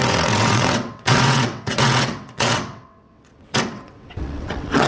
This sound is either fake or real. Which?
fake